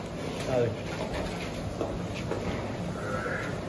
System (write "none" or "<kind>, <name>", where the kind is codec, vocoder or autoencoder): none